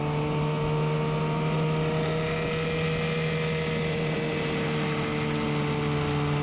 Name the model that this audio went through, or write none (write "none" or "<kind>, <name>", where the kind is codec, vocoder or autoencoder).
none